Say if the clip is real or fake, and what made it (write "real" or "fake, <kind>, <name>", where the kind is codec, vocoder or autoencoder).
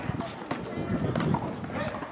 real